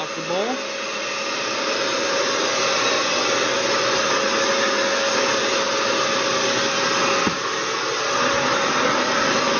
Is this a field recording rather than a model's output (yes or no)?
yes